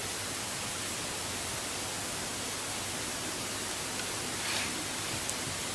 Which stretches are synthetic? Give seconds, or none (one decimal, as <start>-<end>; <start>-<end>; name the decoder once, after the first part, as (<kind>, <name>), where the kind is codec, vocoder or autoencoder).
0.0-5.7 (vocoder, BigVGAN v2)

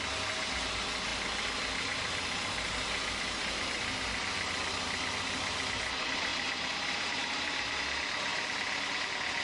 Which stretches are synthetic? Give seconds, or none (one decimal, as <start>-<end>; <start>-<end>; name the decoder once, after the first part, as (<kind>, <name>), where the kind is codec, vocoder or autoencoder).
6.3-7.8 (vocoder, BigVGAN v2)

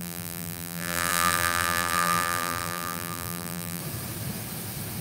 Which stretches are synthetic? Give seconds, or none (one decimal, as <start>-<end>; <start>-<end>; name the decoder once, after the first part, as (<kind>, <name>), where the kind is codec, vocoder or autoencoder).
0.0-3.8 (vocoder, BigVGAN v2)

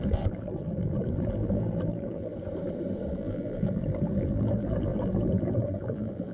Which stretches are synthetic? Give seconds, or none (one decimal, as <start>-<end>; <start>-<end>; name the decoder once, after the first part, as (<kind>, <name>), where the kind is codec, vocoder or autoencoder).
0.0-2.3 (vocoder, BigVGAN v2); 3.1-6.3

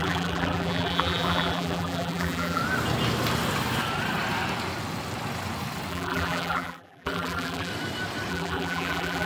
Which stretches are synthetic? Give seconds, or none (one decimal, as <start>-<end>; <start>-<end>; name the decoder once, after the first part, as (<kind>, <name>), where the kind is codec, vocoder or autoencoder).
0.0-2.6 (vocoder, BigVGAN v2); 5.9-7.7; 8.3-9.3

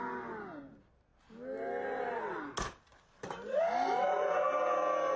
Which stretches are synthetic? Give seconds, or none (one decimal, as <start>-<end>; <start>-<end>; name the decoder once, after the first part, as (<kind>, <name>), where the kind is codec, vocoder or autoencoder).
2.9-3.6 (vocoder, BigVGAN v2)

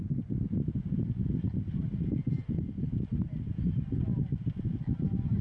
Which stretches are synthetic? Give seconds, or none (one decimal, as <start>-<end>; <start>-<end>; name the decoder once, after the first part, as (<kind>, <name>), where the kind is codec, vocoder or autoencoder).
none